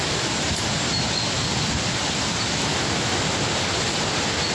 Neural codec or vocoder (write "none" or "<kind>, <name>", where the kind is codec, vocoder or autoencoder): none